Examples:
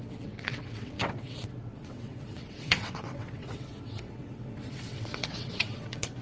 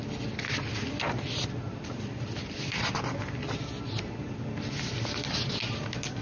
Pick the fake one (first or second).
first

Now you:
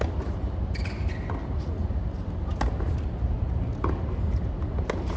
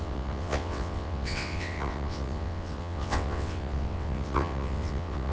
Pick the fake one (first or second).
second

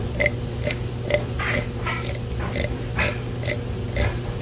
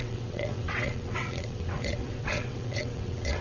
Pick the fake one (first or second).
second